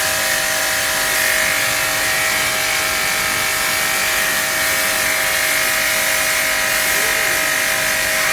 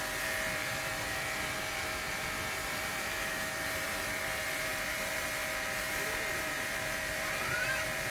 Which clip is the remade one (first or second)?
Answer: second